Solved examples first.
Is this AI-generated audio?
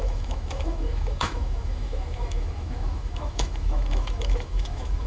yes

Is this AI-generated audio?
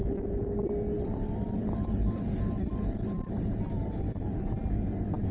no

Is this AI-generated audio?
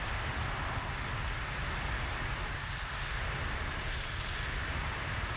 no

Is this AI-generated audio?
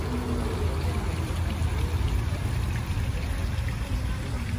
no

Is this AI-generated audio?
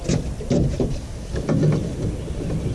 no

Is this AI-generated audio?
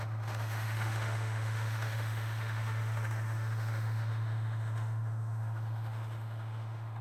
yes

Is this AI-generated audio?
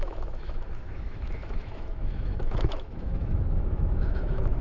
yes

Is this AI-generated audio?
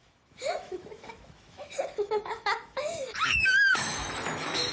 yes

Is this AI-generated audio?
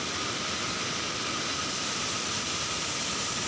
no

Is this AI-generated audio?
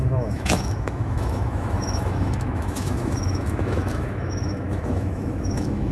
yes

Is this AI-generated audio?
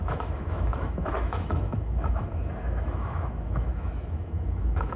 yes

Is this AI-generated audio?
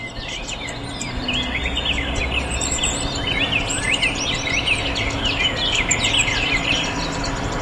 no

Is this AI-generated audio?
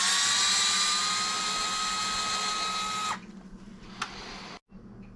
no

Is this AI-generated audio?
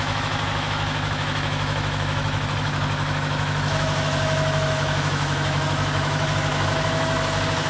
yes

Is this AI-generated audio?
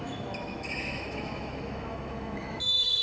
yes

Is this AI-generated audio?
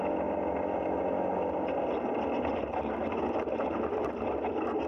no